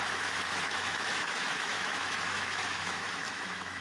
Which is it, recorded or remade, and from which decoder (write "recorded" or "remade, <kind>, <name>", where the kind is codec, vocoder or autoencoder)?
remade, autoencoder, DAC-VAE